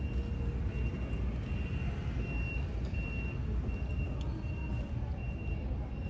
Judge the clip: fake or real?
real